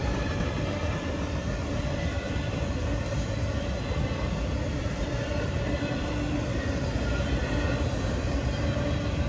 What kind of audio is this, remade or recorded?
recorded